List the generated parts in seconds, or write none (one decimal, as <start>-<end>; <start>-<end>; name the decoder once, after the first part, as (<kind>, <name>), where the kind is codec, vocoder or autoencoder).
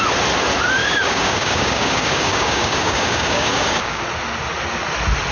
0.8-4.0 (codec, DAC)